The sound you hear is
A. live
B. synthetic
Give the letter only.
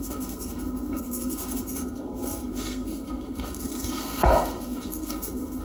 B